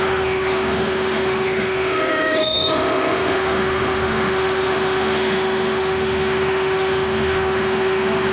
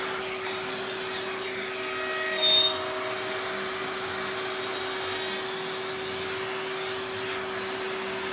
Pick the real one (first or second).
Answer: second